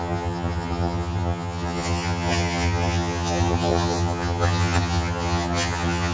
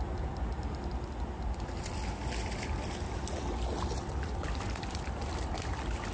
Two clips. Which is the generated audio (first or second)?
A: first